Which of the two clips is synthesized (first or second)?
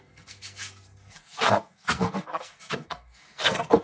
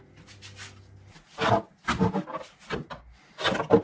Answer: first